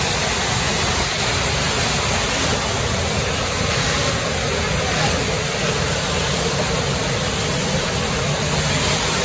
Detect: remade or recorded recorded